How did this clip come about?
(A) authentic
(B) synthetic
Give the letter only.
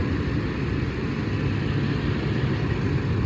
A